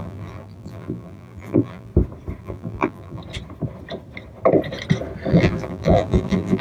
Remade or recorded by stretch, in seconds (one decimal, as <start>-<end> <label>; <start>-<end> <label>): 0.0-1.9 remade; 1.9-2.4 recorded; 2.4-3.2 remade; 3.2-5.3 recorded; 5.3-6.6 remade